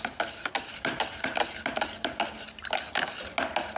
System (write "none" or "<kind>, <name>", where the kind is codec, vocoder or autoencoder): none